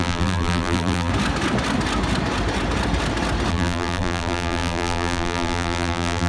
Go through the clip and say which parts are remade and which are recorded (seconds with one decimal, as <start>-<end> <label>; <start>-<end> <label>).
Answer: 0.0-1.1 remade; 1.1-3.5 recorded; 3.5-6.3 remade

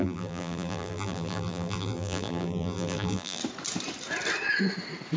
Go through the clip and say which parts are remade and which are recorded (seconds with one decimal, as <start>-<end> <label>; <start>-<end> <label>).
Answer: 0.0-3.4 remade; 3.4-5.2 recorded

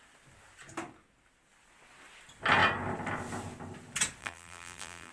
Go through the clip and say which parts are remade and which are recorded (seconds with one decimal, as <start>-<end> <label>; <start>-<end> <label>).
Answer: 0.0-4.2 recorded; 4.2-5.1 remade

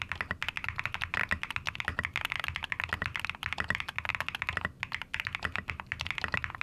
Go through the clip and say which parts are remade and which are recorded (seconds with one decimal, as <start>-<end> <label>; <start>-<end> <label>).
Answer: 0.0-6.6 recorded

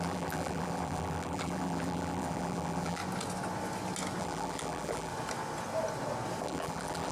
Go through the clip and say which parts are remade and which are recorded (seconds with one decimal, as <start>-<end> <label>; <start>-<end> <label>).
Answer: 0.0-3.0 remade; 3.0-4.2 recorded; 4.2-5.1 remade; 5.1-6.4 recorded; 6.4-7.1 remade